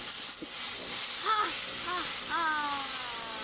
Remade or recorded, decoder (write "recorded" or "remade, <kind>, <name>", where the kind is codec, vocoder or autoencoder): recorded